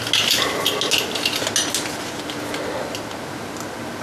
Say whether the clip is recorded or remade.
recorded